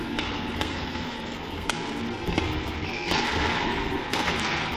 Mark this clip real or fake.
fake